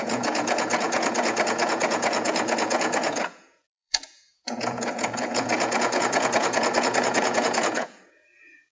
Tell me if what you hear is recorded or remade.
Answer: remade